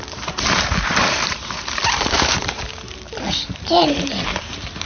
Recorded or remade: remade